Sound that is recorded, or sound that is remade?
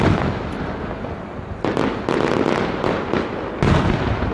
recorded